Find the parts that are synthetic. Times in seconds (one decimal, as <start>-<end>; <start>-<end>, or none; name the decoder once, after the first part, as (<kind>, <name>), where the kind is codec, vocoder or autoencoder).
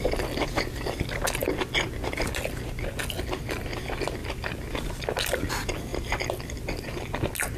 none